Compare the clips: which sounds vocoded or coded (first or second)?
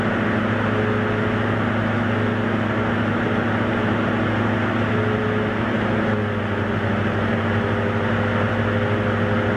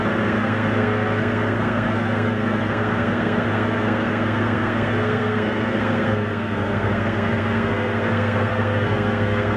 second